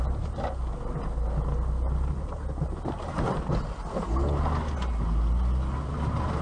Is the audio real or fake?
real